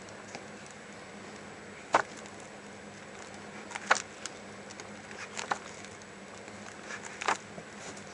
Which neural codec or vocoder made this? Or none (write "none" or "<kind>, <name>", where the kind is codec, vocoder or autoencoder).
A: none